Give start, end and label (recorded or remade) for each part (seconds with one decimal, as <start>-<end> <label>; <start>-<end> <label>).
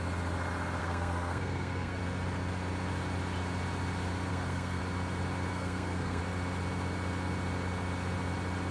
0.0-0.8 recorded; 0.8-2.0 remade; 2.0-4.3 recorded; 4.3-4.8 remade; 4.8-5.5 recorded; 5.5-6.2 remade; 6.2-8.7 recorded